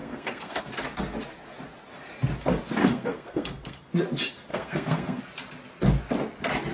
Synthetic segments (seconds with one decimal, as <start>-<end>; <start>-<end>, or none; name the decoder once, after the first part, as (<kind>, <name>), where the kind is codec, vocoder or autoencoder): 0.0-0.6 (codec, SNAC); 2.8-3.9; 4.5-5.2